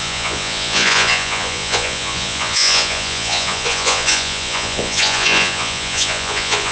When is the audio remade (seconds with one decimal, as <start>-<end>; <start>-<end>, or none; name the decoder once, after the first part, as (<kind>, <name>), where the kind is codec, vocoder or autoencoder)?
0.0-6.7 (vocoder, Vocos)